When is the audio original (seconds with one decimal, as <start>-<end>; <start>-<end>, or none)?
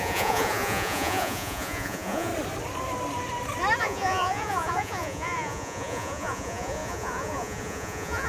2.3-3.8